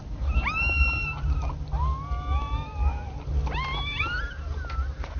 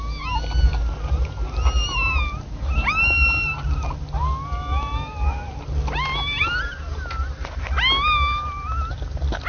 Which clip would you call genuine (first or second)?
second